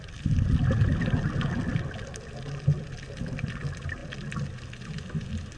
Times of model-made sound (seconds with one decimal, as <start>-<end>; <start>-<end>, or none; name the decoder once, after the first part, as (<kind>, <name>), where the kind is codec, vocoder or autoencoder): none